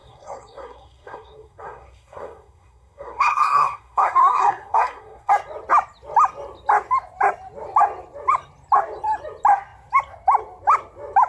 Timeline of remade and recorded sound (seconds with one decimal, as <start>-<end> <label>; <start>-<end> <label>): 0.0-5.3 remade; 5.3-11.3 recorded